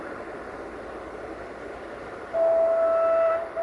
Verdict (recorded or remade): recorded